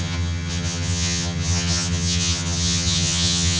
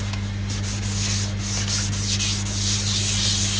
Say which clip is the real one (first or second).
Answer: second